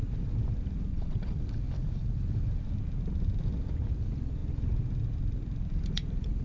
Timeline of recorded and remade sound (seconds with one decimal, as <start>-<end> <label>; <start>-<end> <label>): 0.0-0.9 recorded; 0.9-1.4 remade; 1.4-6.4 recorded